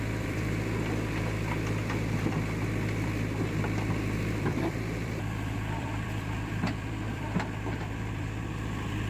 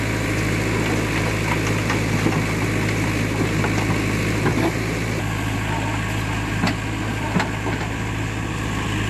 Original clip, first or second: second